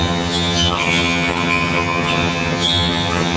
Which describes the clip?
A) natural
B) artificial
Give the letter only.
B